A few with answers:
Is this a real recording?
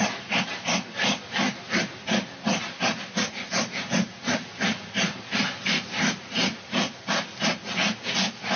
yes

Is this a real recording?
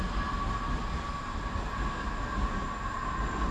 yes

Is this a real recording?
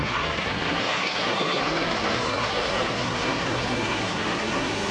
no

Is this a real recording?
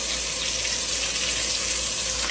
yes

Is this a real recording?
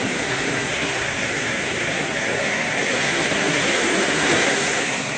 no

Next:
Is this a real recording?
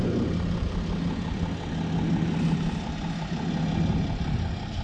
yes